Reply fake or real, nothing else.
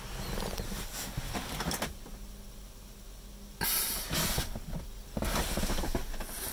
real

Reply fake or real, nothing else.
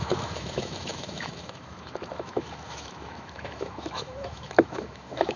fake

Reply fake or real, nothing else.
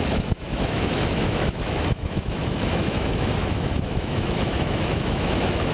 fake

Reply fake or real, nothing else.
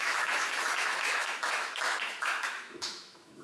fake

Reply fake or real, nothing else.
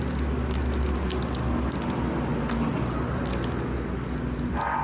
real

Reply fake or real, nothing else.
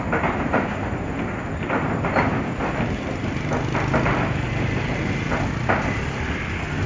real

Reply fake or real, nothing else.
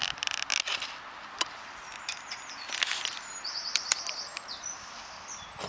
real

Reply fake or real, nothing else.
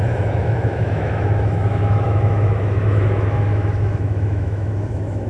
fake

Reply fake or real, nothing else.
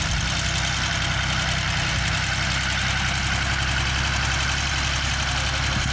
real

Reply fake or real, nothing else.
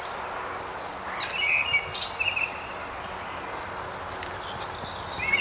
real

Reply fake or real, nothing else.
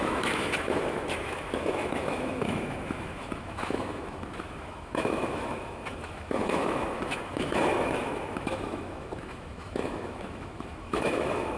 fake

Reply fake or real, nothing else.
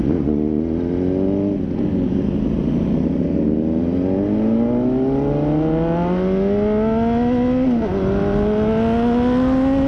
real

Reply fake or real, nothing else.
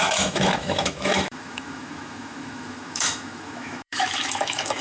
fake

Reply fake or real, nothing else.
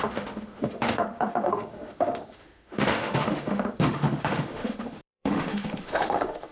fake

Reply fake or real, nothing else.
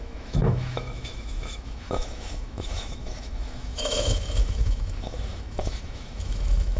fake